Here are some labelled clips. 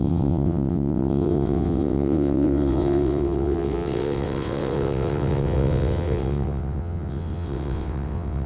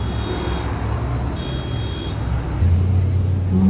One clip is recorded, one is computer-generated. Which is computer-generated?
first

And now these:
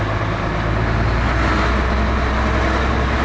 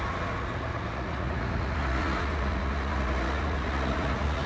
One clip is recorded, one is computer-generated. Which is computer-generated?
second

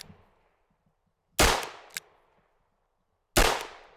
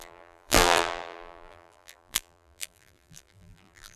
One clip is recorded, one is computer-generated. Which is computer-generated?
second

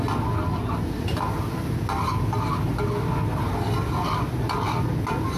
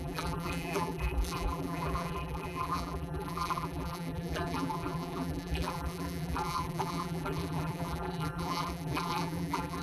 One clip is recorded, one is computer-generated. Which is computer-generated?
second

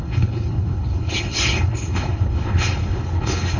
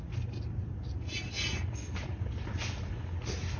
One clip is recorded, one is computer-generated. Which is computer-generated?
first